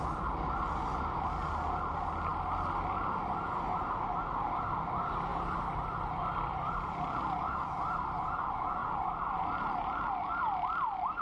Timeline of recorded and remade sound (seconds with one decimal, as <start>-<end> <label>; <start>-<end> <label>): 0.0-5.3 recorded; 5.3-7.2 remade; 7.2-11.2 recorded

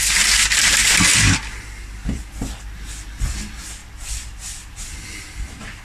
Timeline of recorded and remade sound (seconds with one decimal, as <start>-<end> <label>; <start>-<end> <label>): 0.0-3.8 recorded; 3.8-5.8 remade

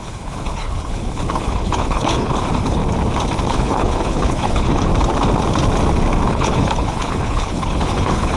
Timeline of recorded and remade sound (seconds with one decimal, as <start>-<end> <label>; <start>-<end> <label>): 0.0-2.8 remade; 2.8-3.5 recorded; 3.5-4.9 remade; 4.9-6.3 recorded; 6.3-8.4 remade

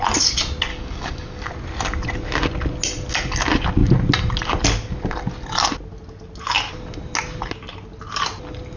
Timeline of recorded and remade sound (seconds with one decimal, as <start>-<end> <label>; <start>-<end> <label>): 0.0-0.7 recorded; 0.7-1.5 remade; 1.5-8.8 recorded

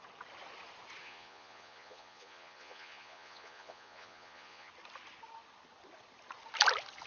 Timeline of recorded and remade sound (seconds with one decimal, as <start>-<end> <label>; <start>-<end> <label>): 0.0-1.0 recorded; 1.0-4.7 remade; 4.7-7.1 recorded

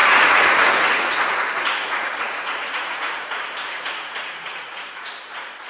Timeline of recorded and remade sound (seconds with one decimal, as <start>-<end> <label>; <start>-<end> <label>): 0.0-5.7 remade

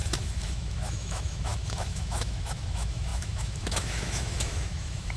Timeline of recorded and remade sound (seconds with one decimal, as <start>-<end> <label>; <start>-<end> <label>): 0.0-5.2 remade